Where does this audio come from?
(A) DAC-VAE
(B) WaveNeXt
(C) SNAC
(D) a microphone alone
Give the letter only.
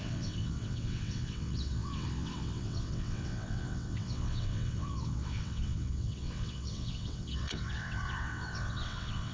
B